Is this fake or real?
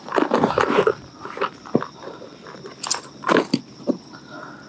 real